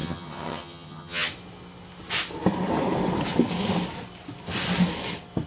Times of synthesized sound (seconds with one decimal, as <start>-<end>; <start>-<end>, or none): 0.0-1.3